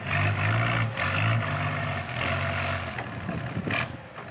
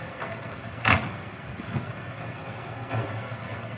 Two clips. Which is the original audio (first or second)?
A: first